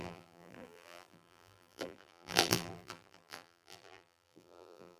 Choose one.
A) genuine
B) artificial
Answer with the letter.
B